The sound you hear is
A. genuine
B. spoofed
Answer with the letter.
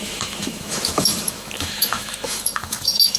B